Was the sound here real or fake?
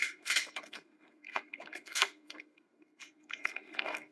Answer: fake